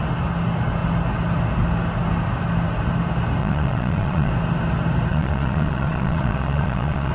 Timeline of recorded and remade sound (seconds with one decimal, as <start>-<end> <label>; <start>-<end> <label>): 0.0-3.4 recorded; 3.4-4.3 remade; 4.3-5.1 recorded; 5.1-7.1 remade